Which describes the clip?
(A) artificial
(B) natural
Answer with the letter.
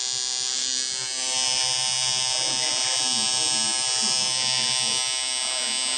B